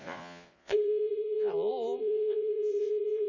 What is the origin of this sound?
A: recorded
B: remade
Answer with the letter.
B